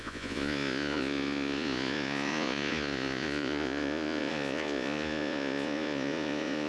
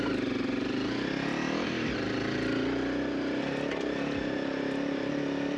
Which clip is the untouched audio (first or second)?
second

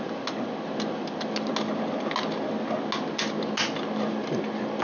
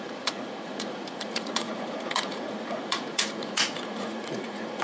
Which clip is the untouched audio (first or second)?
first